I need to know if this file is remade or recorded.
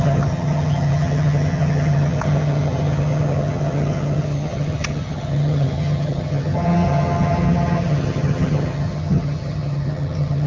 remade